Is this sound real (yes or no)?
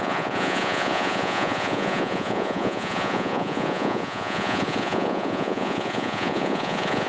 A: no